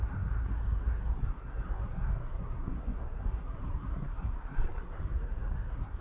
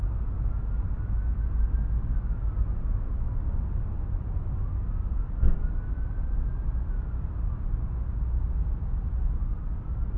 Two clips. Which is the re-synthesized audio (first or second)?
first